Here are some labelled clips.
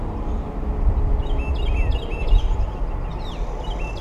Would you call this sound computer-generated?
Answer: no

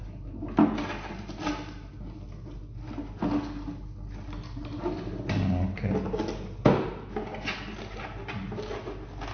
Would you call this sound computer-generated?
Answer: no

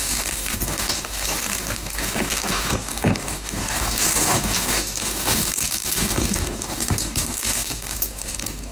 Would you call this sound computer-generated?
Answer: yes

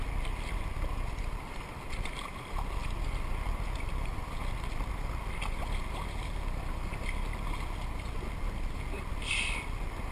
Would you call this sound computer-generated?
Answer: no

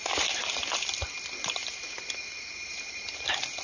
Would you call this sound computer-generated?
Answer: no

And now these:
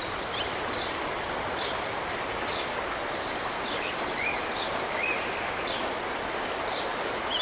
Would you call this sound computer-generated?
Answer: no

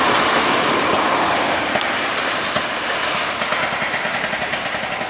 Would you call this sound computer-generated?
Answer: no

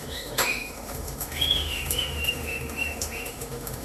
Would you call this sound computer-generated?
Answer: yes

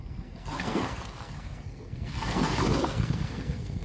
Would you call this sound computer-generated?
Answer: yes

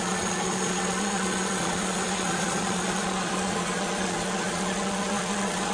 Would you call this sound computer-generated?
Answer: yes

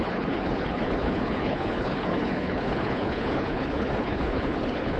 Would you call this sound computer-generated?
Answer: yes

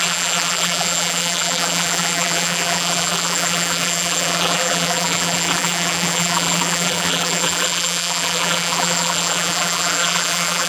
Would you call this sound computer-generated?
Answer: yes